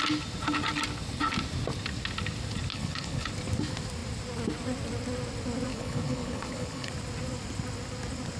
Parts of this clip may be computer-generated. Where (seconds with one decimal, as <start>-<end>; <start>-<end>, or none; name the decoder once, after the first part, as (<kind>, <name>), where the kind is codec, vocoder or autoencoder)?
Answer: 2.7-3.3 (codec, HILCodec); 5.7-6.9